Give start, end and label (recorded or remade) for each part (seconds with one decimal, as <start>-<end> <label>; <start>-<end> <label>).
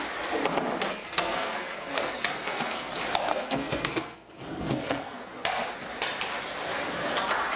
0.0-0.9 recorded; 0.9-2.9 remade; 2.9-3.3 recorded; 3.3-5.3 remade; 5.3-7.6 recorded